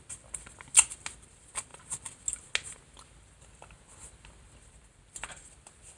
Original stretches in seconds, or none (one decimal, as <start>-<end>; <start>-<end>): 0.0-6.0